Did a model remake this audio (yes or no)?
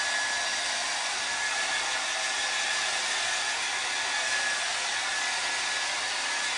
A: no